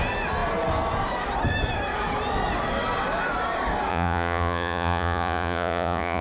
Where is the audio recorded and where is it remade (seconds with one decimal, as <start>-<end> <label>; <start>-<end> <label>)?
0.0-3.9 recorded; 3.9-6.2 remade